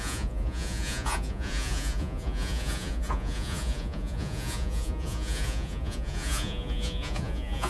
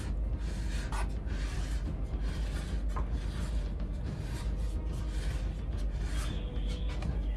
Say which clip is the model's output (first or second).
first